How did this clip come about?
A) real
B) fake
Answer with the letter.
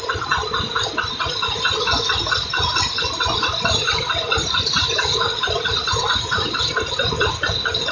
A